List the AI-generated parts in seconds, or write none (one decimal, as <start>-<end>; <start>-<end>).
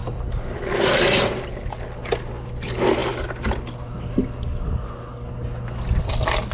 none